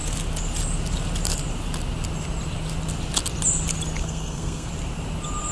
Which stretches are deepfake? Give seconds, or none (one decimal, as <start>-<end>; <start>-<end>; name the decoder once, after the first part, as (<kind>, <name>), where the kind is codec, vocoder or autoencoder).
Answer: 4.0-4.7 (codec, SNAC)